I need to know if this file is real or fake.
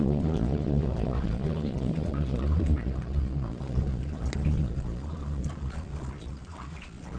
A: fake